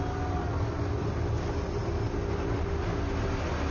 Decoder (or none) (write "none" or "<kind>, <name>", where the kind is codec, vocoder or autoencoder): none